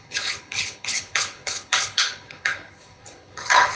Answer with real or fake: fake